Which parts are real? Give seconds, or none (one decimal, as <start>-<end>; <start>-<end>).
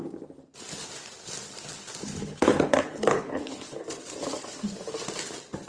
0.0-2.0; 3.8-5.7